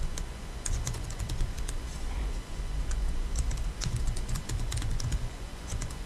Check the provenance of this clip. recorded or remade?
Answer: remade